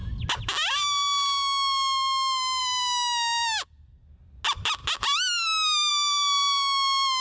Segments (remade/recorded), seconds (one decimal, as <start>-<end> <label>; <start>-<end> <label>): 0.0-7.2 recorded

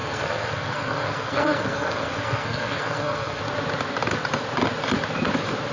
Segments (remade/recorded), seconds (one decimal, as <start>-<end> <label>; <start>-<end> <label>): 0.0-3.4 remade; 3.4-5.7 recorded

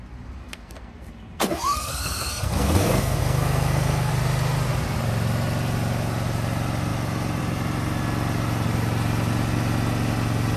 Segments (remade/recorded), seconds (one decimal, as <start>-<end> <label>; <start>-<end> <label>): 0.0-0.4 recorded; 0.4-4.1 remade; 4.1-10.6 recorded

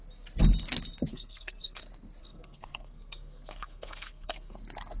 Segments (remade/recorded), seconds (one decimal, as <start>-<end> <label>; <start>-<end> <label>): 0.0-1.1 recorded; 1.1-1.8 remade; 1.8-2.2 recorded; 2.2-4.6 remade; 4.6-5.0 recorded

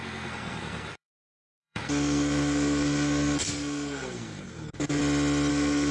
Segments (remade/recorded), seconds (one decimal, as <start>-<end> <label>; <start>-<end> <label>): 0.0-5.0 remade; 5.0-5.5 recorded; 5.5-5.9 remade

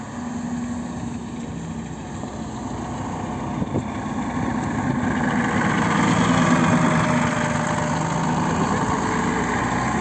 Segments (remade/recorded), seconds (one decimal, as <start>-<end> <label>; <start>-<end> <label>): 0.0-10.0 recorded